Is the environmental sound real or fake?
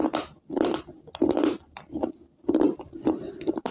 real